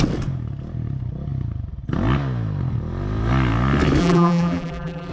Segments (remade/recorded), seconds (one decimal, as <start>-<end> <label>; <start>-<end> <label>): 0.0-4.0 recorded; 4.0-5.1 remade